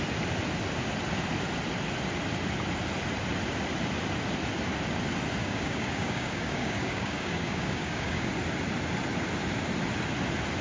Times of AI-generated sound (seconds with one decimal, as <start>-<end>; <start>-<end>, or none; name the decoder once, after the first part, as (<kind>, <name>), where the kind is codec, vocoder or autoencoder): 5.4-8.3 (codec, DAC)